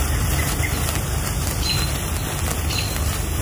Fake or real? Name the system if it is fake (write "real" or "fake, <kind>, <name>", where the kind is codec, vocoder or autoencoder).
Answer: fake, vocoder, BigVGAN v2